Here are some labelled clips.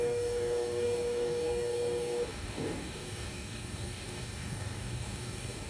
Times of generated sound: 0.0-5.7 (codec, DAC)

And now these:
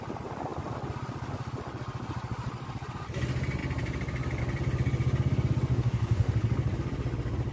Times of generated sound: 5.7-6.3 (codec, DAC)

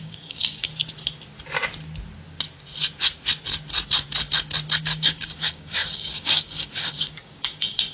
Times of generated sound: 0.0-0.7 (codec, DAC); 4.8-7.9

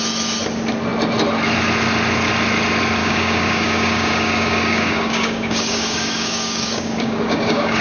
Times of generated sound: 3.0-7.8 (codec, DAC)